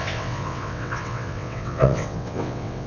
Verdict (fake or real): fake